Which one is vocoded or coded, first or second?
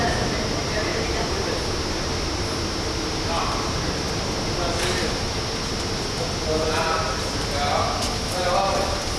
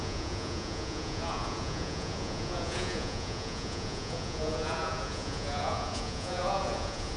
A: second